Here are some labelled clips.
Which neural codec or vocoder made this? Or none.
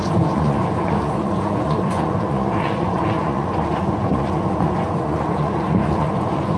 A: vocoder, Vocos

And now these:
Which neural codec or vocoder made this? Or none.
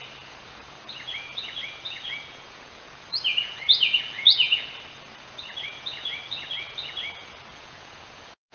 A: vocoder, Vocos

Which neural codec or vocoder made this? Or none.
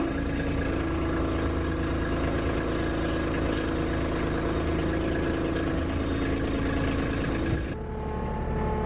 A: none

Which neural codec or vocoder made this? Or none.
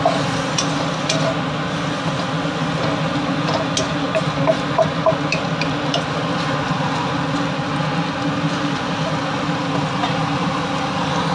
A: none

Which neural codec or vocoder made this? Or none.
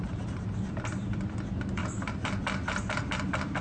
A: none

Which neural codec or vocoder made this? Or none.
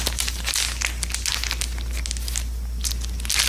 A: none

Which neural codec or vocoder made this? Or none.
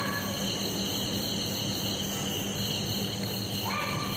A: none